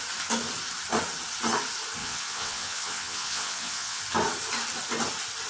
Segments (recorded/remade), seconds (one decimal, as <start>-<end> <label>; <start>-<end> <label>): 0.0-2.0 recorded; 2.0-4.0 remade; 4.0-5.5 recorded